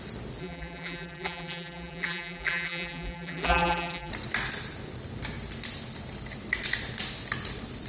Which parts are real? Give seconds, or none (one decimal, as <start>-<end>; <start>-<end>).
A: 0.0-0.4; 4.1-7.9